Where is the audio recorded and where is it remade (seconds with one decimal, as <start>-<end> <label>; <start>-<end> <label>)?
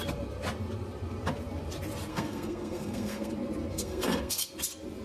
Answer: 0.0-2.1 recorded; 2.1-3.3 remade; 3.3-3.7 recorded; 3.7-4.5 remade; 4.5-5.0 recorded